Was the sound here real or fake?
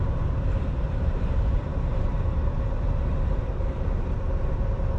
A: fake